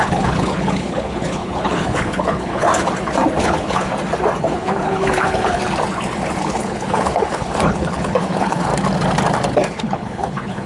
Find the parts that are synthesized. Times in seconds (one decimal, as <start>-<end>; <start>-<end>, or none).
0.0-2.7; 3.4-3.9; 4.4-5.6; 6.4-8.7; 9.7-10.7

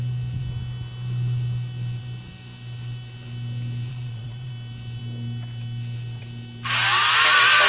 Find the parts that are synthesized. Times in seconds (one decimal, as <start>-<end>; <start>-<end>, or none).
3.9-4.5

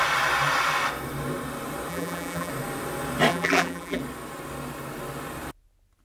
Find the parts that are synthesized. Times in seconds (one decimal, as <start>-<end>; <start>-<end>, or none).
1.9-2.5; 3.3-4.0

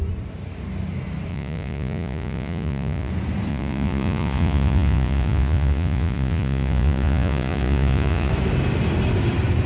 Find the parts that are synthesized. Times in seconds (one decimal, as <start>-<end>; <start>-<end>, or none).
1.3-3.1; 3.5-8.3